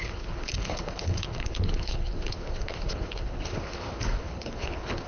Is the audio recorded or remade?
remade